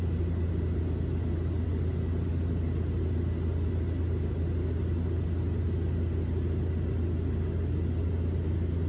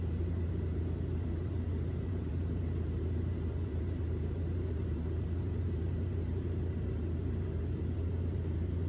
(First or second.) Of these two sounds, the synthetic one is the second